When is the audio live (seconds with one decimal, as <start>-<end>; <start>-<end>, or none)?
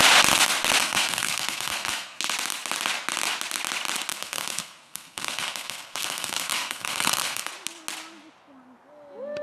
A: 0.0-0.8; 2.2-4.1; 7.5-9.4